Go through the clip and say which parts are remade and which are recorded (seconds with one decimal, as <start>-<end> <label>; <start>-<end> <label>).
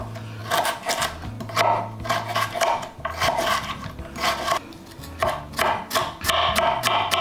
0.0-7.2 recorded